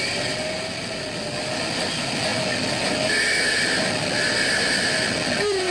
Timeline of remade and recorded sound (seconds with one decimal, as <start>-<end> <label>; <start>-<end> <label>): 0.0-5.7 recorded